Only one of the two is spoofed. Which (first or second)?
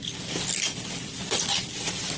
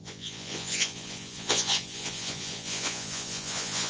second